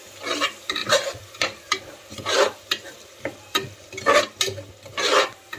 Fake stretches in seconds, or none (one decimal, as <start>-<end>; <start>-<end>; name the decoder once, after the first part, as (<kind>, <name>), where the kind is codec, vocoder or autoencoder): 0.8-4.2 (vocoder, BigVGAN v2)